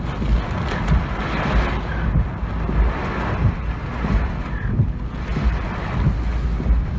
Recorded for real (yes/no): yes